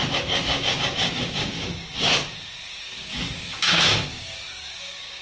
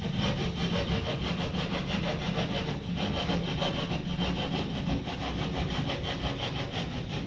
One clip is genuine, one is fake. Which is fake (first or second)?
first